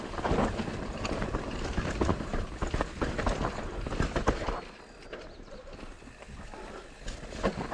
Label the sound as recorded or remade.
recorded